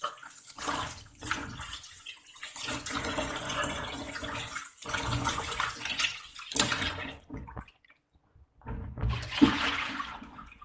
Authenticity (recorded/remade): remade